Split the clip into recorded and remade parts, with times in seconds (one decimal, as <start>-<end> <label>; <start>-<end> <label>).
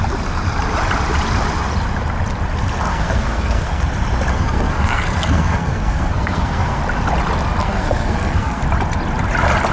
0.0-2.9 recorded; 2.9-3.8 remade; 3.8-4.3 recorded; 4.3-6.8 remade; 6.8-7.6 recorded; 7.6-8.6 remade; 8.6-9.7 recorded